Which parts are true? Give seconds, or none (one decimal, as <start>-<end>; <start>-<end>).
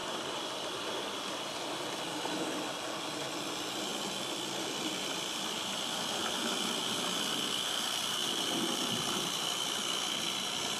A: 2.4-3.9; 6.7-10.8